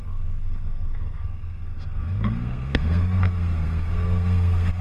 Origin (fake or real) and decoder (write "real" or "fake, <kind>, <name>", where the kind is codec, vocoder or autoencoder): fake, codec, SNAC